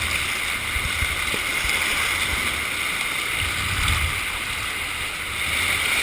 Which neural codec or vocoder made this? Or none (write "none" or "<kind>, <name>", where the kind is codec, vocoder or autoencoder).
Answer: none